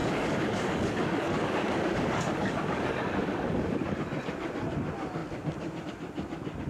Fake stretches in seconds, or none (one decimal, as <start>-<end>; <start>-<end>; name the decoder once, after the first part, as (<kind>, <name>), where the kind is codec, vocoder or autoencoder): 0.0-4.0 (codec, DAC)